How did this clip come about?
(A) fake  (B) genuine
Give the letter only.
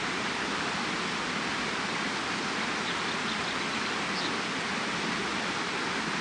B